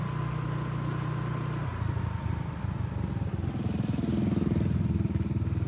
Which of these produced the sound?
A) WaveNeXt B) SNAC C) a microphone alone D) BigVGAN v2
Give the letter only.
C